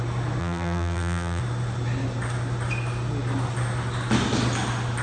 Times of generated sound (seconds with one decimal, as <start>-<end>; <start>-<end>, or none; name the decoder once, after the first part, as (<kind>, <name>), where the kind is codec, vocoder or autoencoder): 0.4-1.4 (vocoder, BigVGAN v2)